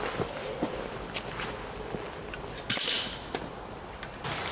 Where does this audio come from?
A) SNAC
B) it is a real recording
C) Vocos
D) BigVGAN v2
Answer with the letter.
B